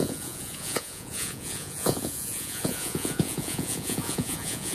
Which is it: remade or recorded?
remade